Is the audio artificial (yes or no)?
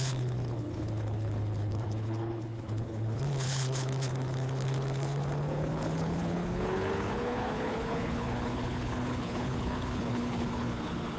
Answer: yes